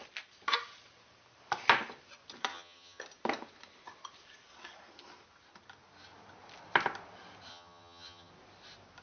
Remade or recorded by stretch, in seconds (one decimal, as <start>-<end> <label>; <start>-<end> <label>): 0.0-2.5 recorded; 2.5-3.0 remade; 3.0-7.5 recorded; 7.5-8.3 remade; 8.3-9.0 recorded